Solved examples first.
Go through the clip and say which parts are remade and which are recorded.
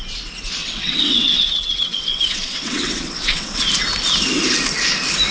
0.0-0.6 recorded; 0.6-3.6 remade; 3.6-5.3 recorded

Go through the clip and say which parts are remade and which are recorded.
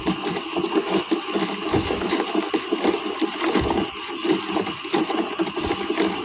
0.0-6.2 recorded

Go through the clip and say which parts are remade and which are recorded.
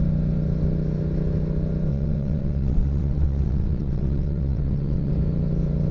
0.0-1.9 recorded; 1.9-5.1 remade; 5.1-5.9 recorded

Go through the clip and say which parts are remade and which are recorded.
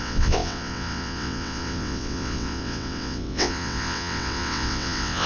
0.0-5.3 remade